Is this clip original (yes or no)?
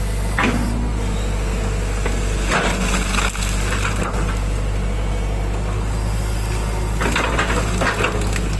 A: yes